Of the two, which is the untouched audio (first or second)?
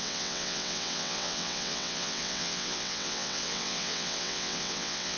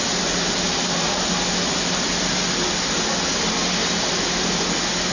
second